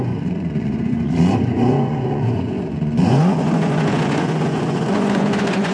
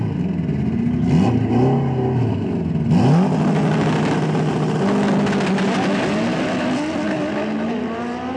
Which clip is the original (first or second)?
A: second